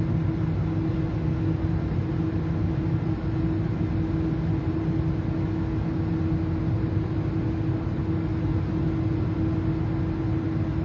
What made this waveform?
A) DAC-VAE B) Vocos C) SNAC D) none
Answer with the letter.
D